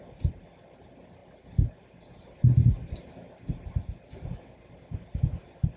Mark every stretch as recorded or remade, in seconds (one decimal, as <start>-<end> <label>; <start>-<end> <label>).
0.0-5.8 recorded